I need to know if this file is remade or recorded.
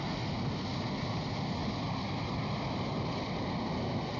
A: recorded